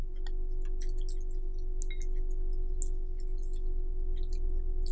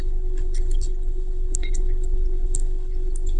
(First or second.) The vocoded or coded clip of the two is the second